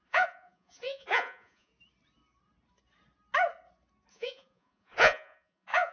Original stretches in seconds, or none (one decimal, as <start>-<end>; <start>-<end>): 1.7-4.1